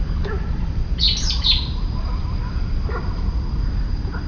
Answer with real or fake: fake